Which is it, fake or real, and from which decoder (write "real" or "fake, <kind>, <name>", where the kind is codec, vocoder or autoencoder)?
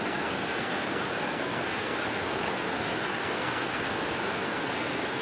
fake, codec, SNAC